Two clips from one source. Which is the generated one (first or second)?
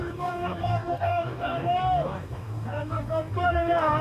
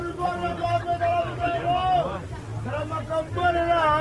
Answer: first